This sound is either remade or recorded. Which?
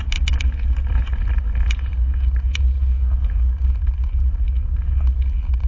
recorded